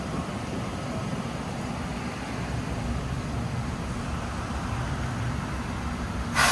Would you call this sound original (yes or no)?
yes